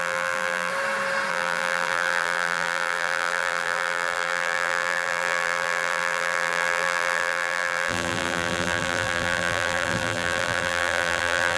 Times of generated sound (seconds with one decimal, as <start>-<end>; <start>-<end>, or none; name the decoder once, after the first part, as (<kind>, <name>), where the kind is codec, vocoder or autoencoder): 0.0-0.7 (vocoder, BigVGAN v2); 1.3-11.6